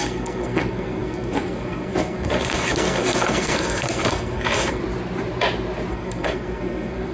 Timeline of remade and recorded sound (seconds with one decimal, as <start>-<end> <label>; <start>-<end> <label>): 0.0-4.8 remade; 4.8-5.9 recorded; 5.9-7.1 remade